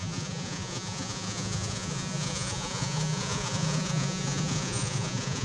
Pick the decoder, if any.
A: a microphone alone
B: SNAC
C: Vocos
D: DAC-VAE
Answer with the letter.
C